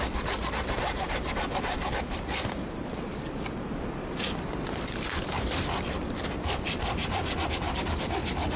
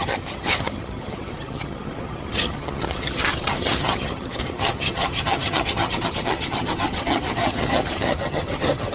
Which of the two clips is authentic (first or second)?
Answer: first